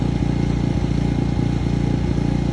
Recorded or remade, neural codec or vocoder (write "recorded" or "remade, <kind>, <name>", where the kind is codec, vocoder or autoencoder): recorded